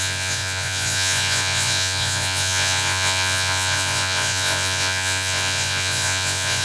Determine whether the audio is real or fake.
fake